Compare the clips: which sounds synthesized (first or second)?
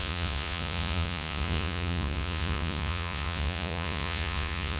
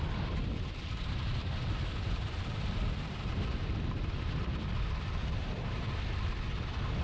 first